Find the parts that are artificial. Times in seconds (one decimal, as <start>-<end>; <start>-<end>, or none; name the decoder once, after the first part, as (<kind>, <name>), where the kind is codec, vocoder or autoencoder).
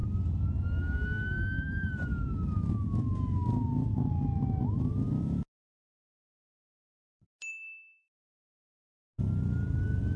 2.1-6.0 (autoencoder, DAC-VAE); 7.5-8.4